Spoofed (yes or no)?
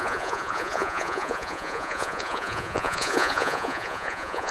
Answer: yes